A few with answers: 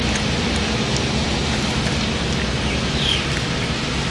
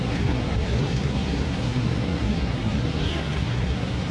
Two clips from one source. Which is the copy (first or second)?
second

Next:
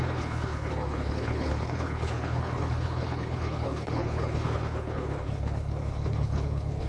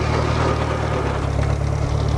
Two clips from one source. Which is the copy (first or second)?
first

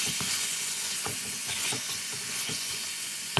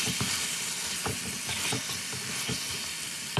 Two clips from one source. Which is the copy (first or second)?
first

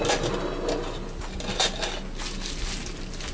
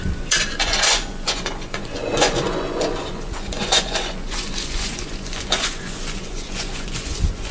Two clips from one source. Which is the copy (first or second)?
second